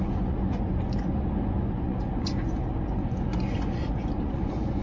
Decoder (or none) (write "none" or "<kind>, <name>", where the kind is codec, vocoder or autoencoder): vocoder, Vocos